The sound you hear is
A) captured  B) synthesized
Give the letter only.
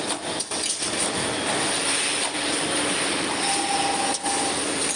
A